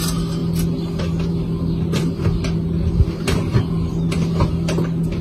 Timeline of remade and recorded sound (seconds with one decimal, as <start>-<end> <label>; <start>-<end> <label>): 0.0-5.2 recorded